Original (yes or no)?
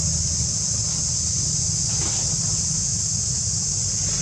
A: yes